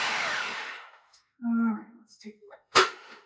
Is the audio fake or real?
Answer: fake